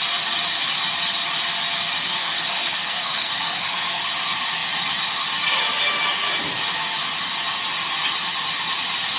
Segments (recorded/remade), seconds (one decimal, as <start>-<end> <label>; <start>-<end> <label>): 0.0-2.2 recorded; 2.2-4.0 remade; 4.0-9.2 recorded